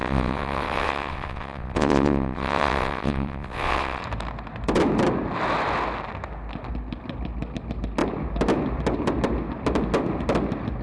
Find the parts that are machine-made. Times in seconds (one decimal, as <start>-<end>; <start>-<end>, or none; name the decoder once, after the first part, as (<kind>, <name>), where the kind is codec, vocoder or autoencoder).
0.0-4.0 (vocoder, WaveNeXt)